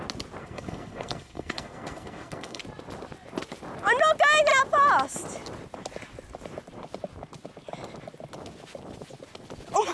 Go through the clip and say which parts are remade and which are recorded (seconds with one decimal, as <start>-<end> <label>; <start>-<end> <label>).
0.0-0.4 recorded; 0.4-2.6 remade; 2.6-9.9 recorded

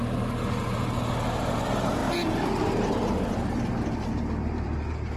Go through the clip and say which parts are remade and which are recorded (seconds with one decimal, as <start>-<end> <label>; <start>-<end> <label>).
0.0-5.2 remade

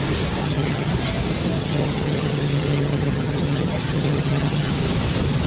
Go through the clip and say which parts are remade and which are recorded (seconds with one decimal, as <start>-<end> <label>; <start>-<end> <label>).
0.0-0.4 recorded; 0.4-0.9 remade; 0.9-1.6 recorded; 1.6-4.7 remade; 4.7-5.5 recorded

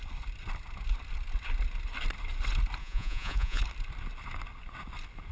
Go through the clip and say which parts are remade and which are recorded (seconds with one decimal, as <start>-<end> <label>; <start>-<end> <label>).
0.0-2.8 recorded; 2.8-3.6 remade; 3.6-5.3 recorded

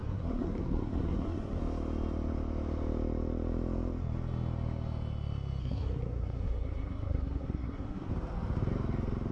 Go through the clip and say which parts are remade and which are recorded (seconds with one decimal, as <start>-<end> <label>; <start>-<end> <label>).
0.0-1.6 remade; 1.6-5.6 recorded; 5.6-8.1 remade; 8.1-9.3 recorded